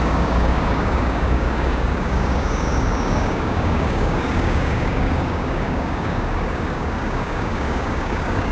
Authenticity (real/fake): fake